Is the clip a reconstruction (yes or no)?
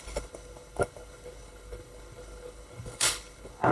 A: yes